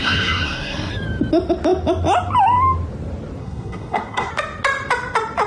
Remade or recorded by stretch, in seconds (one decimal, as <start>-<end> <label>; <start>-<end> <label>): 0.0-0.9 remade; 0.9-3.4 recorded; 3.4-4.3 remade; 4.3-5.5 recorded